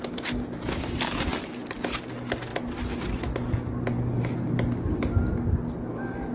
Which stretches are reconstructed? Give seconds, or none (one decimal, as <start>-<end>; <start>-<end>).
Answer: none